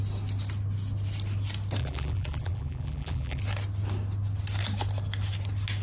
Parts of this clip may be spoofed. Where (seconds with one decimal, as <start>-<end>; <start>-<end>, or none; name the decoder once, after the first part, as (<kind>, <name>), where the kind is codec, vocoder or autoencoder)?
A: 1.8-3.4 (vocoder, BigVGAN v2)